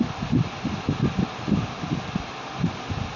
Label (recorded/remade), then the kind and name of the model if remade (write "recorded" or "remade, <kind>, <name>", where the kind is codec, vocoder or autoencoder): recorded